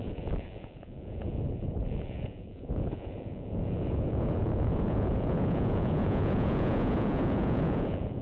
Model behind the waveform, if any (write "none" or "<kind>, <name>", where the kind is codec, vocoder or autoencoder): vocoder, Vocos